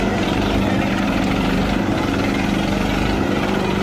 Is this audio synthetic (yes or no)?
yes